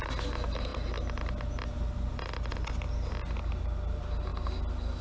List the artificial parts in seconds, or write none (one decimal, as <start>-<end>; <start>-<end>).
none

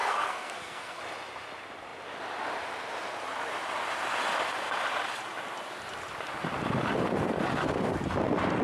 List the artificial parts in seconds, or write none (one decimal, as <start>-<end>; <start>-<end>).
0.0-1.0

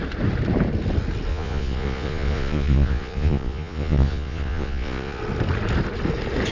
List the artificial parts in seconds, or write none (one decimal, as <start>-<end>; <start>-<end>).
1.3-5.2